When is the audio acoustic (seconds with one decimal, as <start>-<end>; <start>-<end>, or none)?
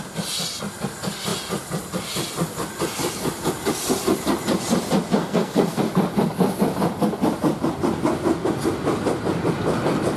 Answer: 0.0-5.2; 5.8-10.2